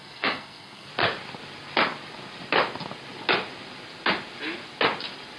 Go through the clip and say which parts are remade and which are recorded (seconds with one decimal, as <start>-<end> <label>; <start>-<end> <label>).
0.0-0.9 remade; 0.9-5.4 recorded